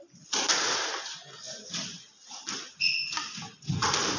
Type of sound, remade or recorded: recorded